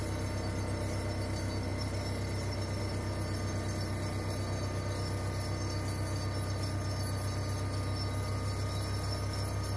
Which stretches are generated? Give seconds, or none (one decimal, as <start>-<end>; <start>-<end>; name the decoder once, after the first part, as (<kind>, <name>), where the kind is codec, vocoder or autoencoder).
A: 1.7-2.8 (vocoder, BigVGAN v2)